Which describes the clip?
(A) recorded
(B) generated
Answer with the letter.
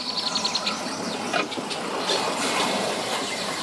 A